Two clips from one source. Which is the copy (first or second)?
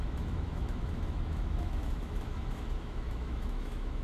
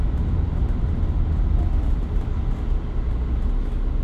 first